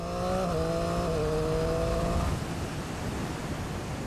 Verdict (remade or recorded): recorded